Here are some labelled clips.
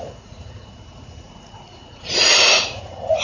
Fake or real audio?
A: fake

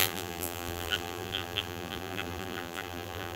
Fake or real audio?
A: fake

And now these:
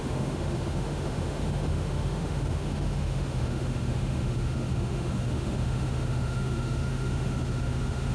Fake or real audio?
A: fake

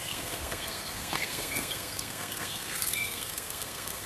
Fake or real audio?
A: fake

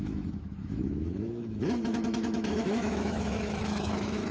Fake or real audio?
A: fake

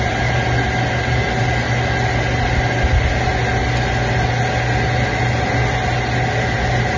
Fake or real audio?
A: real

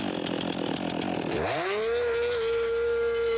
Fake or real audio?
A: real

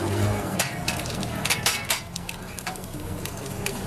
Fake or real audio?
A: fake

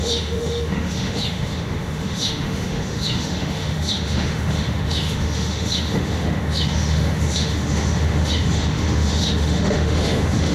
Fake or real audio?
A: fake